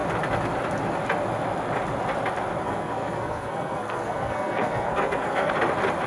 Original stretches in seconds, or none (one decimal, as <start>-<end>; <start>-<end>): 0.0-2.6; 5.5-6.1